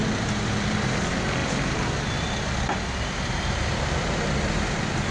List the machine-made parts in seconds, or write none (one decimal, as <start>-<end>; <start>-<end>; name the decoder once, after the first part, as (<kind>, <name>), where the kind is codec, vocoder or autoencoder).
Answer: none